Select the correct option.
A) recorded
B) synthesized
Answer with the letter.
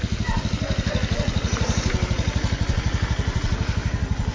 A